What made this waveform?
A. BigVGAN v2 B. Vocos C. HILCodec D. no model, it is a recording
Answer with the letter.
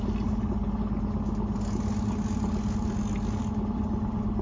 D